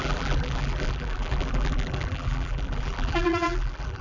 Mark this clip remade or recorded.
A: remade